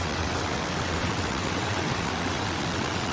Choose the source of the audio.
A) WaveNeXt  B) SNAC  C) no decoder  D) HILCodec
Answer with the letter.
A